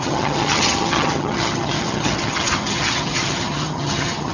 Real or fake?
fake